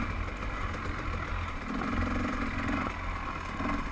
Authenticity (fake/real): real